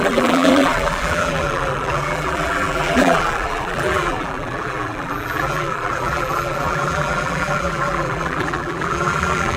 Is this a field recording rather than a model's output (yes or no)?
no